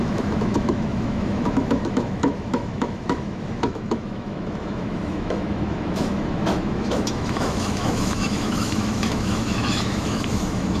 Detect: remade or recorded remade